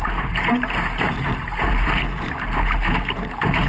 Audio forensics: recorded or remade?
remade